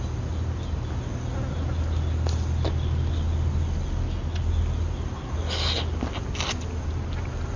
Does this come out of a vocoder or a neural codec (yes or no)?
no